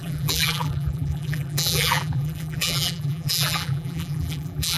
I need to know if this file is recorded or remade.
remade